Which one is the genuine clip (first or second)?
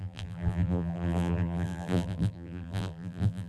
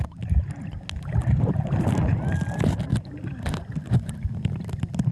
second